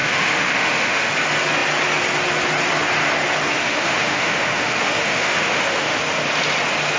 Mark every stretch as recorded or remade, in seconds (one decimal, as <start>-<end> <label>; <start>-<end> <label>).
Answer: 0.0-1.1 remade; 1.1-3.6 recorded; 3.6-6.0 remade; 6.0-7.0 recorded